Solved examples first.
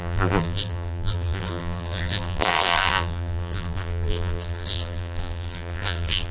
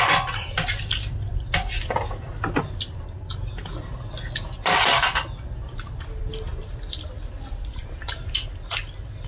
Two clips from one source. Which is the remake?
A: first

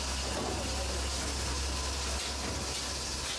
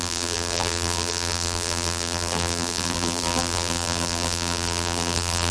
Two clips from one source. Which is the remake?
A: second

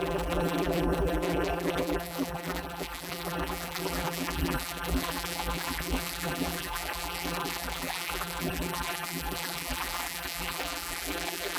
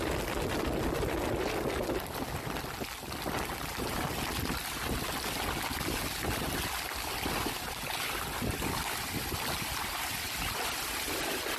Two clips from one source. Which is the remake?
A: first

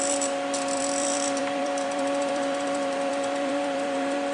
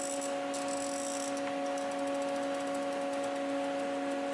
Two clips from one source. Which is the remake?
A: first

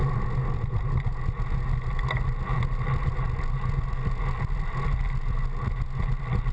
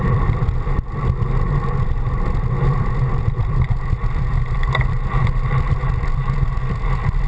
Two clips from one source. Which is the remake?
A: second